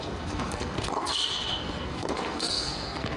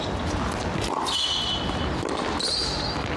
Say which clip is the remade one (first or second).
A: first